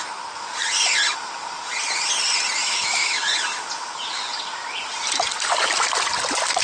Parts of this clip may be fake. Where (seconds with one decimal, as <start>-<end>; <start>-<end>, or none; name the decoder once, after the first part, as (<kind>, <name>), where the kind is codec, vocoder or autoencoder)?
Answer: 2.6-3.2 (autoencoder, DAC-VAE)